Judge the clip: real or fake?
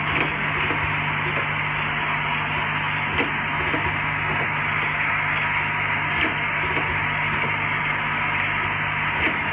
real